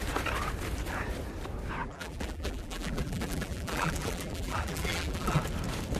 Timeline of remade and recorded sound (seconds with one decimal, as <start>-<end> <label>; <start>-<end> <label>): 0.0-1.8 recorded; 1.8-5.4 remade; 5.4-6.0 recorded